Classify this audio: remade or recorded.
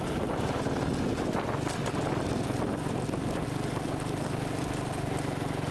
recorded